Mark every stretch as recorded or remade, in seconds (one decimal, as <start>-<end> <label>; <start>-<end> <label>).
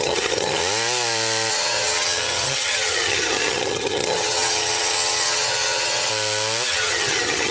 0.0-0.6 remade; 0.6-1.5 recorded; 1.5-6.1 remade; 6.1-6.7 recorded; 6.7-7.5 remade